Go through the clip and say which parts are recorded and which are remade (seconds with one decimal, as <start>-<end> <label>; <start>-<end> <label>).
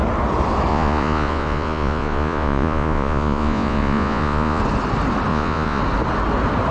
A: 0.0-0.7 recorded; 0.7-4.6 remade; 4.6-5.3 recorded; 5.3-5.8 remade; 5.8-6.7 recorded